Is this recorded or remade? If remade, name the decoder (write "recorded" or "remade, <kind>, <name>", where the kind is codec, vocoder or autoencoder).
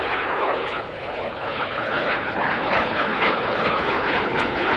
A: remade, codec, HILCodec